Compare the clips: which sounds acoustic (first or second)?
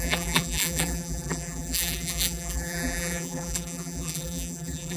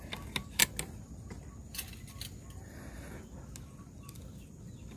second